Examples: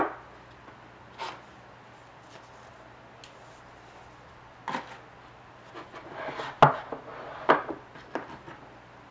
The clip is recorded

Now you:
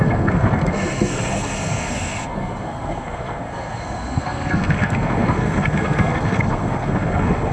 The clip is remade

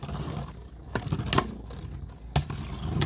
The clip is recorded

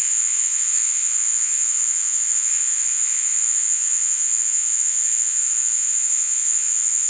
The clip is remade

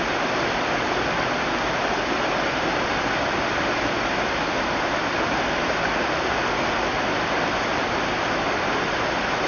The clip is recorded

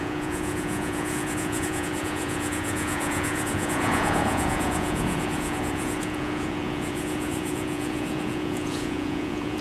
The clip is remade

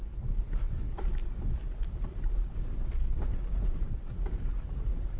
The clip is recorded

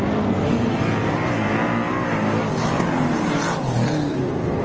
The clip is recorded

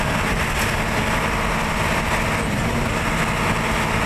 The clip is recorded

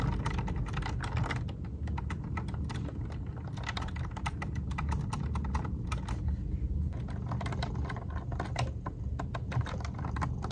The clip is recorded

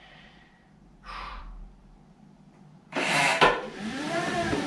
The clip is remade